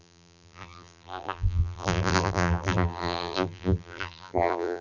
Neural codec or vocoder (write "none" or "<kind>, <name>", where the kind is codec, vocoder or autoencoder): vocoder, BigVGAN v2